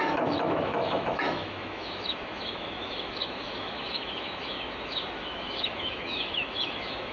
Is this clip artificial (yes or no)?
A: yes